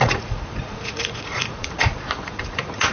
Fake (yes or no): yes